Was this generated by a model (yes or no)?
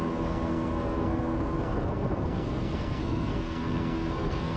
yes